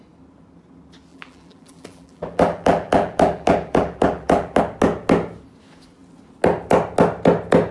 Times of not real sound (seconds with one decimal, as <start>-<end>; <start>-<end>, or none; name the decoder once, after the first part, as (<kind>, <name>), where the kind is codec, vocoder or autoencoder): 1.1-4.6 (vocoder, BigVGAN v2)